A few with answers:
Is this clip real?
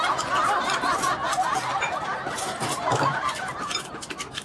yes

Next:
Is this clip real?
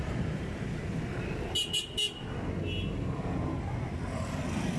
yes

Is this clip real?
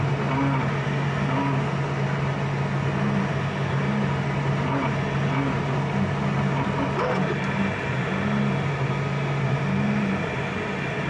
yes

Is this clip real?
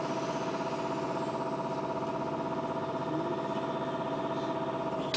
yes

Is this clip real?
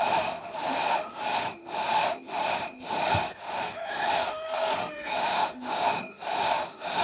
no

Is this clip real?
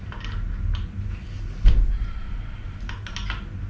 yes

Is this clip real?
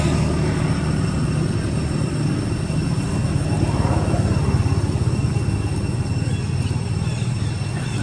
yes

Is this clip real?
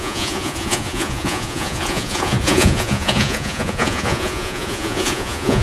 no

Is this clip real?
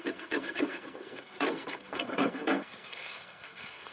no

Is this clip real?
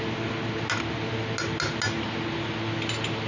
yes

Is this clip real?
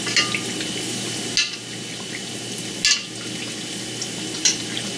yes